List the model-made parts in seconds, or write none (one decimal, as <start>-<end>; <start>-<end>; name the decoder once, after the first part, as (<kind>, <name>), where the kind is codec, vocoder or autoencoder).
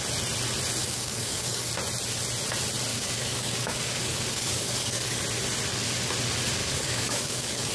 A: 0.8-1.7 (codec, DAC); 2.9-5.2; 6.6-7.7